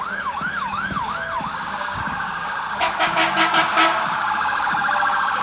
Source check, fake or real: fake